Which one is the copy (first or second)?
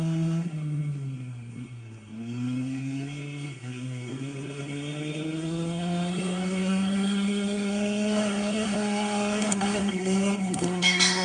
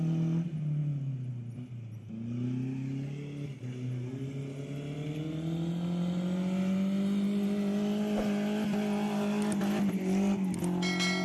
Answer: first